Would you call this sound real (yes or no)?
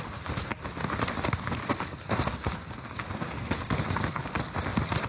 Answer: yes